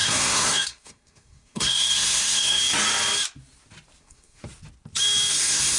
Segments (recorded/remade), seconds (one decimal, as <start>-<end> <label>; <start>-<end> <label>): 0.0-2.6 remade; 2.6-4.0 recorded; 4.0-4.4 remade; 4.4-5.3 recorded; 5.3-5.8 remade